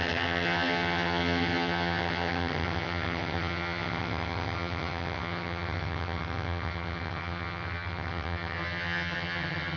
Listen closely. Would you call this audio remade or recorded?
remade